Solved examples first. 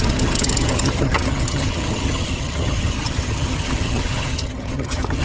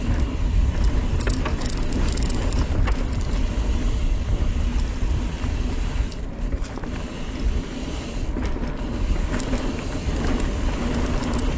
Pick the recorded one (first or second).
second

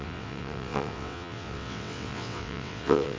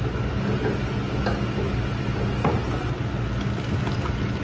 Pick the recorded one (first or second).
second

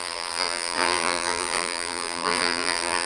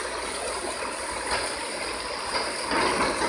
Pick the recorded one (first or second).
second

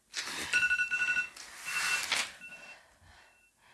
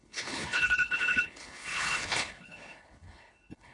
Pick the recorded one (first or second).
first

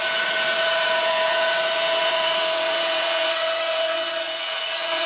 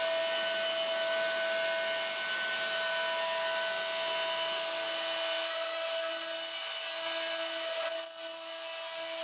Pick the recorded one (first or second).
second